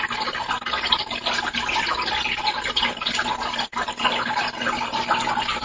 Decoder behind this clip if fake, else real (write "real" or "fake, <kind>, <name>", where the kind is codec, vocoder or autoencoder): real